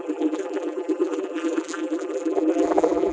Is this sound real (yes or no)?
no